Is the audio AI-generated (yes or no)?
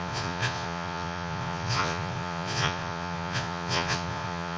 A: yes